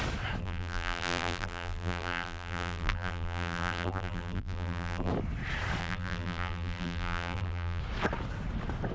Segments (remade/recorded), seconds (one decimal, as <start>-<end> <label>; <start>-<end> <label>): 0.0-0.4 recorded; 0.4-5.1 remade; 5.1-5.8 recorded; 5.8-7.8 remade; 7.8-8.9 recorded